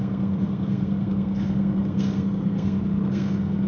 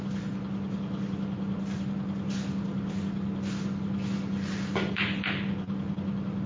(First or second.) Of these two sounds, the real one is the second